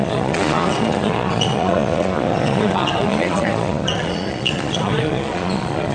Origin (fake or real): fake